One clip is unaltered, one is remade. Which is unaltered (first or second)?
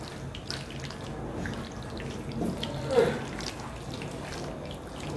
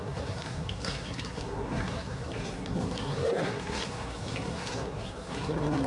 first